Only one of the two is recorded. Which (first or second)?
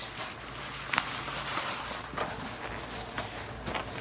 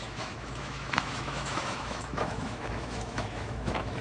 first